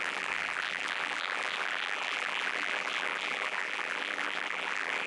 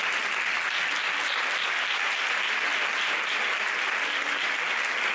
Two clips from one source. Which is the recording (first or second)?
second